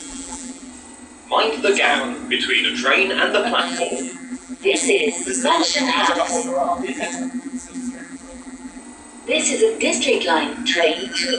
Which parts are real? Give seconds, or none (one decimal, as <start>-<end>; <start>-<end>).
0.7-3.6; 8.8-10.7